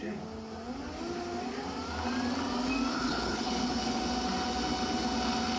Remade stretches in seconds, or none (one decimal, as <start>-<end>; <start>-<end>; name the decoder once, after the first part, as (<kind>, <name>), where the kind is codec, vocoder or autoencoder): 2.9-4.0 (codec, HILCodec)